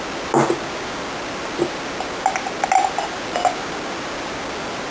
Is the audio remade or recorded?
recorded